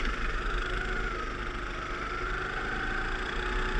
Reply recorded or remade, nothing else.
recorded